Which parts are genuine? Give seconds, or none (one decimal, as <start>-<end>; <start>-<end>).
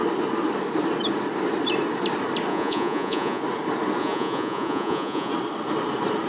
0.0-2.5; 3.4-4.0; 5.3-6.3